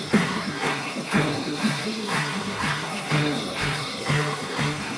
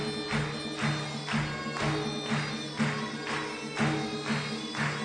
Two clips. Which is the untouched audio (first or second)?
second